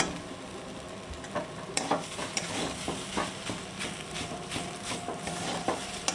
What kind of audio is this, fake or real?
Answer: fake